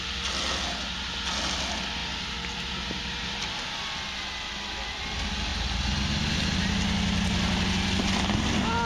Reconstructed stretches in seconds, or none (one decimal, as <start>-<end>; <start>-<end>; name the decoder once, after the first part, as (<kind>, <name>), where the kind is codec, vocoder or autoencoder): none